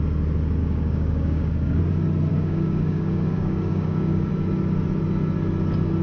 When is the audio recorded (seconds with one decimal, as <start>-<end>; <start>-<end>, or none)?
0.0-0.6; 1.8-2.3; 4.3-6.0